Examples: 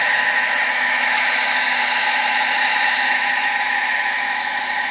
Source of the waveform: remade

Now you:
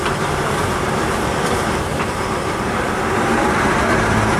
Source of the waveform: remade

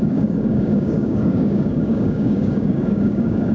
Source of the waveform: remade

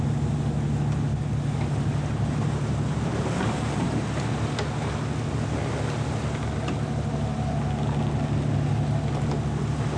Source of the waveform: recorded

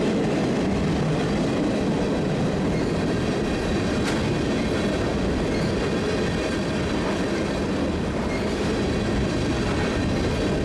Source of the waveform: recorded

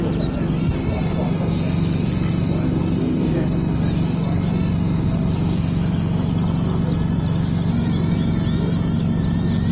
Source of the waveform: recorded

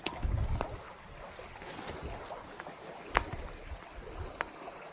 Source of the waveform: recorded